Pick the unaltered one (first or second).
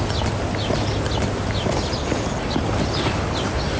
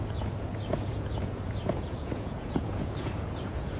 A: first